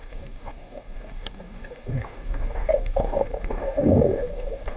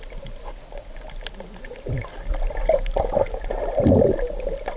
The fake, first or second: first